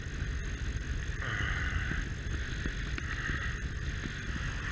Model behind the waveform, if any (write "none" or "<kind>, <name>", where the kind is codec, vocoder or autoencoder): none